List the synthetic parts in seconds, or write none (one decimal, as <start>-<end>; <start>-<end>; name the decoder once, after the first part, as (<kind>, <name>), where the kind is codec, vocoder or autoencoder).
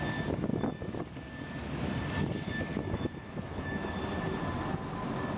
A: 0.5-1.0 (autoencoder, DAC-VAE); 2.7-3.9